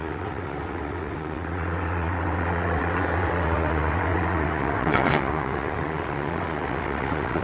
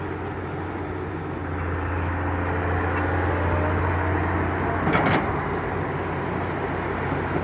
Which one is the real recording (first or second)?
second